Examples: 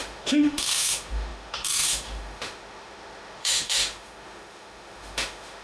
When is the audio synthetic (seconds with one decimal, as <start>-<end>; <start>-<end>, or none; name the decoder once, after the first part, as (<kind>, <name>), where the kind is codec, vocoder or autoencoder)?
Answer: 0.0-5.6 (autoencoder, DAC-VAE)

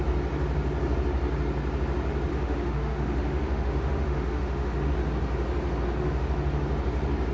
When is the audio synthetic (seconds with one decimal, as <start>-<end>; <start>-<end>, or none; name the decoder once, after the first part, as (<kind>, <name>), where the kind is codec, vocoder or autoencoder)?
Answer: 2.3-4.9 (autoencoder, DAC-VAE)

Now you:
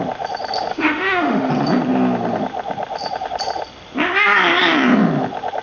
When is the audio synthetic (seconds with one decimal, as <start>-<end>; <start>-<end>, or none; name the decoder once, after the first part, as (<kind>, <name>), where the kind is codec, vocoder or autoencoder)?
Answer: 0.7-1.5 (autoencoder, DAC-VAE)